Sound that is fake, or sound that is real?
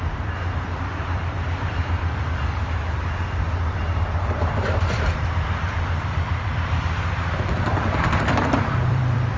fake